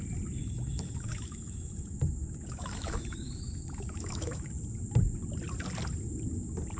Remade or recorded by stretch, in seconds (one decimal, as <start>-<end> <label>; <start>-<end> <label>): 0.0-0.4 recorded; 0.4-4.5 remade; 4.5-6.8 recorded